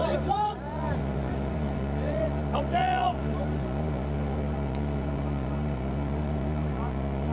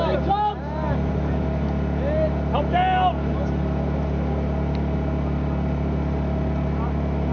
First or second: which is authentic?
second